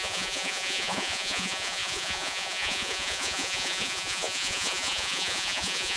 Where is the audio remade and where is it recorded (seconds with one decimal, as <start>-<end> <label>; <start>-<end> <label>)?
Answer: 0.0-6.0 remade